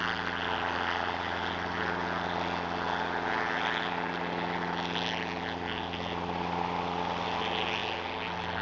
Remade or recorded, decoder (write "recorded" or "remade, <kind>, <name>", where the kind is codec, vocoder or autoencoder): recorded